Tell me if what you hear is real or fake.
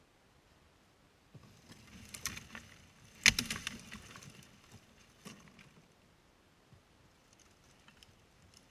real